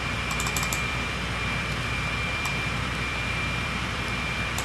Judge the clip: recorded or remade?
remade